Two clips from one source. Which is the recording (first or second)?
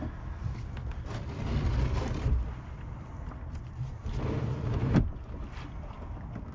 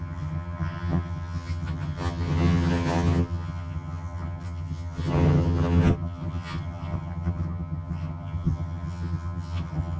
first